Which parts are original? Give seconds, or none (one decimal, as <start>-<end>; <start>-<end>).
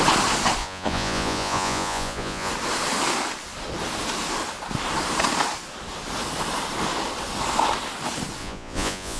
0.0-0.6; 2.5-8.4